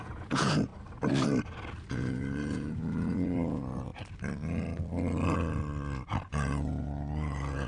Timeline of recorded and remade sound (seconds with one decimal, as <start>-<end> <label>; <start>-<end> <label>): 0.0-0.7 remade; 0.7-1.9 recorded; 1.9-3.9 remade; 3.9-6.3 recorded; 6.3-7.7 remade